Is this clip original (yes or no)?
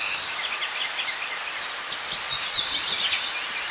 yes